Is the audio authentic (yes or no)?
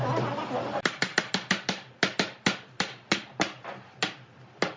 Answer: yes